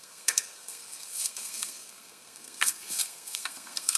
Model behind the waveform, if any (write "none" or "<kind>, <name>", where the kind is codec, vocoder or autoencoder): codec, SNAC